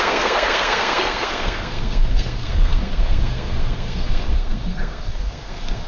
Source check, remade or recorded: remade